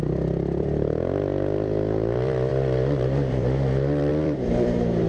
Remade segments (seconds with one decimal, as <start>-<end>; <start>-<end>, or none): 0.0-5.1